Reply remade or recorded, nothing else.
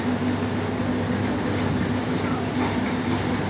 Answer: recorded